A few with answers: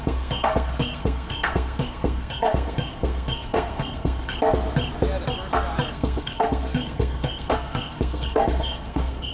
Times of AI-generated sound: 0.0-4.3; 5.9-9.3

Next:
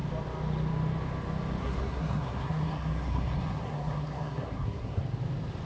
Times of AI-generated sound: 1.6-5.0

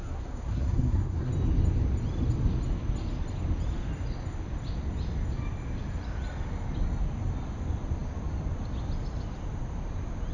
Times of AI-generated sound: 0.0-1.3

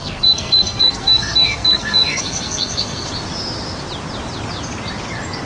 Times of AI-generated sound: 0.0-3.1